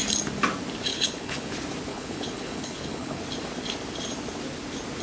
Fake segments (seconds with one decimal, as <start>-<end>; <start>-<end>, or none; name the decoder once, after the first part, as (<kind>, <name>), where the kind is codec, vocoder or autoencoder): 0.9-1.5 (codec, HILCodec); 1.9-3.2